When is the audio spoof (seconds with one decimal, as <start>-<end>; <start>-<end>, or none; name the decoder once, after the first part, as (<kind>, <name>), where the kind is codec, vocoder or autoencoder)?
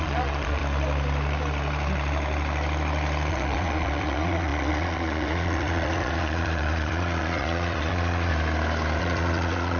0.0-0.6 (vocoder, Vocos); 3.3-8.3; 9.0-9.8